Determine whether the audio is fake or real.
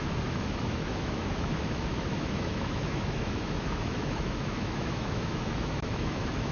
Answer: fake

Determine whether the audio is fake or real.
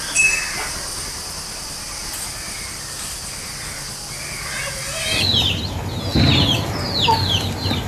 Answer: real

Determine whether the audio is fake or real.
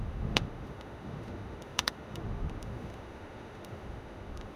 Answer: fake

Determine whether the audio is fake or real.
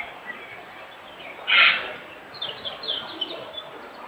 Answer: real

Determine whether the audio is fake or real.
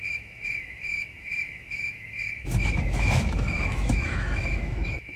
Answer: fake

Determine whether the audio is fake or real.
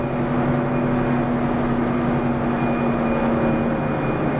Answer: real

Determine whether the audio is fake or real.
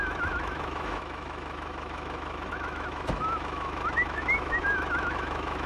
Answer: fake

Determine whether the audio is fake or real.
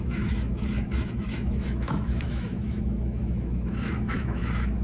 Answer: fake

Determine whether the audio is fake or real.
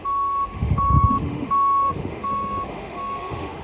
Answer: fake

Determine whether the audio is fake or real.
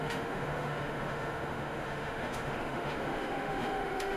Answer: fake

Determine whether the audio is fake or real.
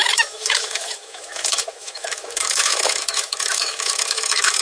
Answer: fake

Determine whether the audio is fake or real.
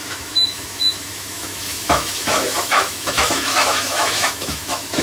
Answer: fake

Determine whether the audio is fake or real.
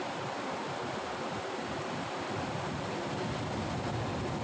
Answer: real